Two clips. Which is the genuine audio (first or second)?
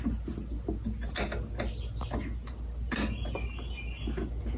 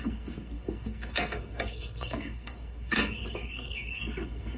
first